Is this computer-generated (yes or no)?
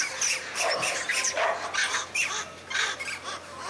no